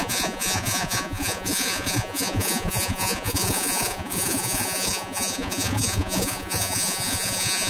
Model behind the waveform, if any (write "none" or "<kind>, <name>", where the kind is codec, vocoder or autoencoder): vocoder, Vocos